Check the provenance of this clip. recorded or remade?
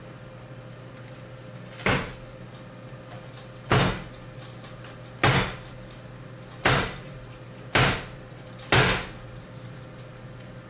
recorded